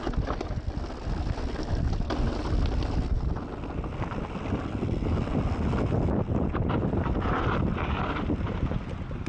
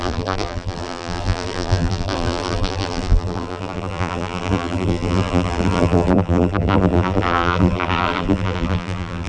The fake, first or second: second